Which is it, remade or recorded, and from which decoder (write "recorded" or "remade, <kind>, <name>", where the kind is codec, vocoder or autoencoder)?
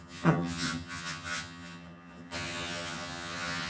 remade, vocoder, HiFi-GAN